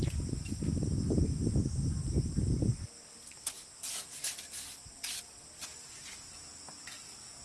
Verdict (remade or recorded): recorded